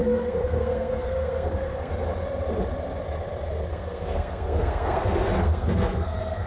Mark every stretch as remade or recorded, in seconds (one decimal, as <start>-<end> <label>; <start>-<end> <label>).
0.0-1.9 remade; 1.9-3.7 recorded; 3.7-6.5 remade